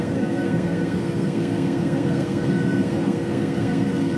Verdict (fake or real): fake